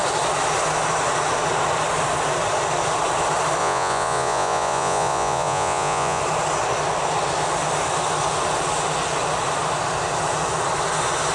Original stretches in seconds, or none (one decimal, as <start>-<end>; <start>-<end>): 0.0-3.6; 6.2-11.3